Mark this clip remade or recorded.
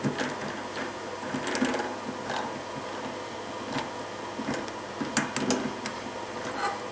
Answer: recorded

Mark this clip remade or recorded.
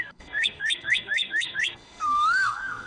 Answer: remade